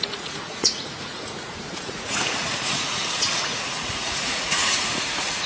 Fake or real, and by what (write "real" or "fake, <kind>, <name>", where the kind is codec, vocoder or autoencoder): fake, vocoder, Vocos